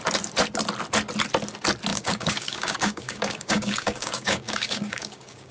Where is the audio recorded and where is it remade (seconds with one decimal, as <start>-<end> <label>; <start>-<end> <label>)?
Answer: 0.0-1.9 recorded; 1.9-5.5 remade